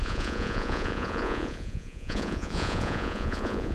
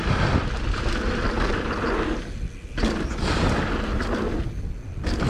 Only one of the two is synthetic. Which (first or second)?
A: first